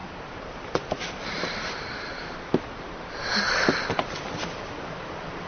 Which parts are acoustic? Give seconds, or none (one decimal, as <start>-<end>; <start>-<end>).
0.0-1.2; 2.2-5.5